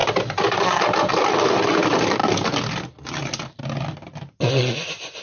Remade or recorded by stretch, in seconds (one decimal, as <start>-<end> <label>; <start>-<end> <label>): 0.0-5.2 recorded